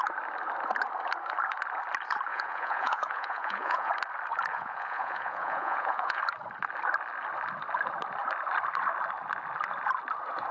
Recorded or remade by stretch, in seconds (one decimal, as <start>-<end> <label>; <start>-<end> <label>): 0.0-2.3 recorded; 2.3-3.9 remade; 3.9-4.5 recorded; 4.5-6.2 remade; 6.2-10.5 recorded